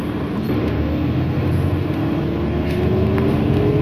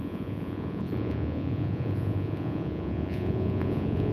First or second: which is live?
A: first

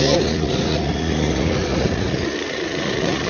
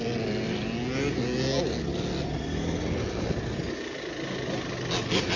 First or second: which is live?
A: second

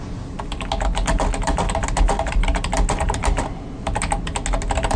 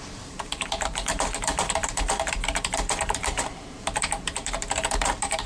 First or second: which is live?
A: first